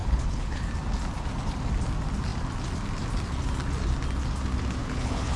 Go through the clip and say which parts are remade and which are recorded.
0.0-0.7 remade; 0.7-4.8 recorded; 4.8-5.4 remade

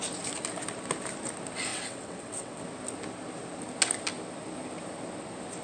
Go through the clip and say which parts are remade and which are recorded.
0.0-1.7 recorded; 1.7-2.6 remade; 2.6-5.6 recorded

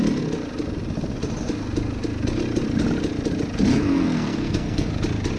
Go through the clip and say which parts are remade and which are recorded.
0.0-3.7 recorded; 3.7-4.9 remade; 4.9-5.4 recorded

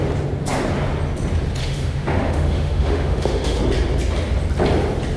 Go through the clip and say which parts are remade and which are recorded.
0.0-1.6 recorded; 1.6-3.6 remade; 3.6-5.2 recorded

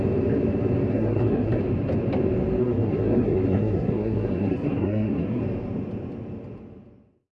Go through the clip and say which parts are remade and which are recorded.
0.0-0.9 recorded; 0.9-1.6 remade; 1.6-2.6 recorded; 2.6-5.4 remade; 5.4-7.3 recorded